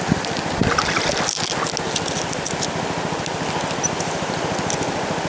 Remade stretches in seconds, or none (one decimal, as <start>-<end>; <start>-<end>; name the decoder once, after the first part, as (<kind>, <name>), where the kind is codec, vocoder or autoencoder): 0.0-0.6 (vocoder, BigVGAN v2); 3.8-5.3